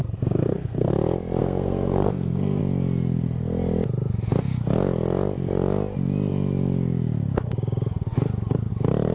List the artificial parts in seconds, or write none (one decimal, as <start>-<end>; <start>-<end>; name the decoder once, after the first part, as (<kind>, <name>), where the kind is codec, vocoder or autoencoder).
0.0-0.9 (codec, SNAC); 1.4-2.6